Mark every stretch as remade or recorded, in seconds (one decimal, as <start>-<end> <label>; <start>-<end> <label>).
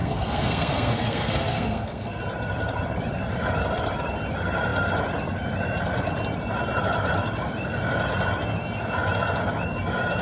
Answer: 0.0-2.2 remade; 2.2-10.2 recorded